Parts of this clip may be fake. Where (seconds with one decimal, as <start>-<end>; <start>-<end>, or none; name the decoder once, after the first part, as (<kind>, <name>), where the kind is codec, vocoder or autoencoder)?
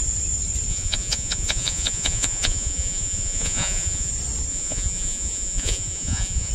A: 0.7-4.1 (vocoder, Vocos); 4.5-6.5